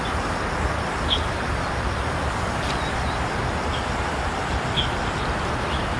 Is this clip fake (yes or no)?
no